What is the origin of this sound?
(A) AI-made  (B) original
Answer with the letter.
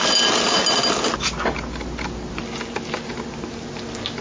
B